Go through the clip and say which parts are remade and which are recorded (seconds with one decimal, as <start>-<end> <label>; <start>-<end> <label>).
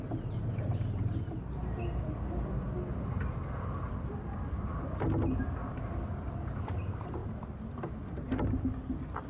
0.0-9.3 recorded